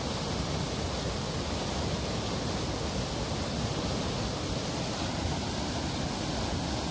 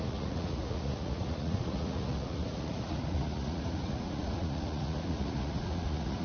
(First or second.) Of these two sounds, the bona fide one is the first